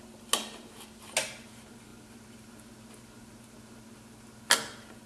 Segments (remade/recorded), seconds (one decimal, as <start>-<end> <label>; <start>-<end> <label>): 0.0-5.1 recorded